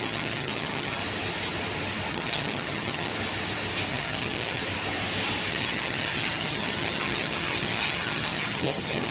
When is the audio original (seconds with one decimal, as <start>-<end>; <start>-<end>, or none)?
1.0-2.1; 3.1-3.9; 4.6-5.5